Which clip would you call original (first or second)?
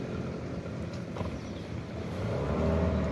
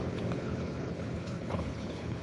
first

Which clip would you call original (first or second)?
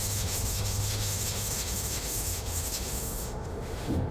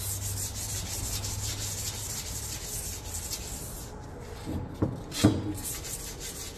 second